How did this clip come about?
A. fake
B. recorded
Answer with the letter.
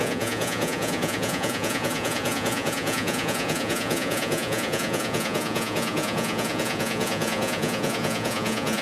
A